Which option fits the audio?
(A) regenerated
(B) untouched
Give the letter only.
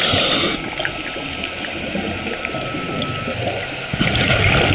A